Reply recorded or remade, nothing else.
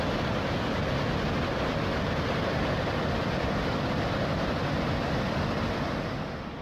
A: recorded